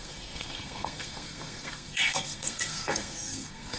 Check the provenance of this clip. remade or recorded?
remade